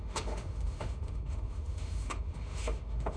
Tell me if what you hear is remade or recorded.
remade